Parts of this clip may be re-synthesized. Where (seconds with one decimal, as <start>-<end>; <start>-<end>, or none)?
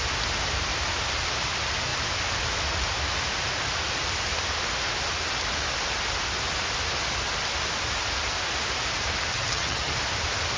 9.3-9.9